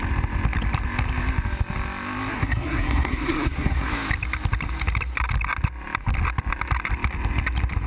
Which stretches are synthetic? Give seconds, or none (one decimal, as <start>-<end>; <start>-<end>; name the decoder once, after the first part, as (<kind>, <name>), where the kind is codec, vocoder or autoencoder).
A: 2.3-3.9 (codec, SNAC)